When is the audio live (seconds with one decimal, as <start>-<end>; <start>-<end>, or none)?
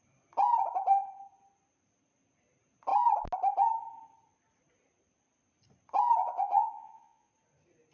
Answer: 0.0-6.2; 7.3-7.9